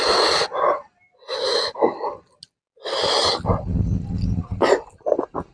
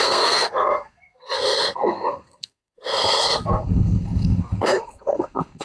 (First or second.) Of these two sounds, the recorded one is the first